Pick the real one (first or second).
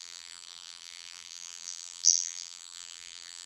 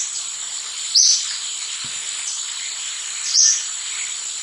second